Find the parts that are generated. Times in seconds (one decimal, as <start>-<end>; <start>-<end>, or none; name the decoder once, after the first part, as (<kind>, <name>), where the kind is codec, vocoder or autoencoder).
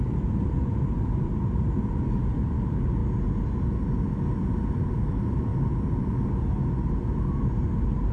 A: 0.0-3.0 (vocoder, BigVGAN v2); 4.9-5.5; 7.3-8.1